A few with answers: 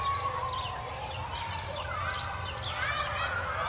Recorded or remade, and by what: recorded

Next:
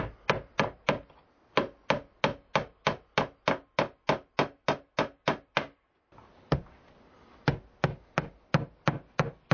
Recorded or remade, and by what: recorded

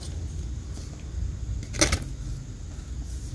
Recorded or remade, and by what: recorded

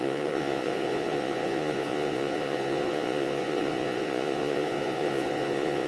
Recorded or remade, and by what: remade, vocoder, Vocos